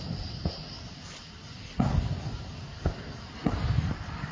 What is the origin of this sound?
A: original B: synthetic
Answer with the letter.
A